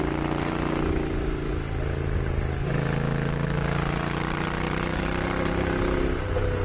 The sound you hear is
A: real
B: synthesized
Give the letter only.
A